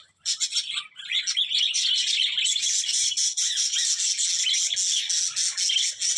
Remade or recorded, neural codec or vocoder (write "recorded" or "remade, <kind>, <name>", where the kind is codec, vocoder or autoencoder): recorded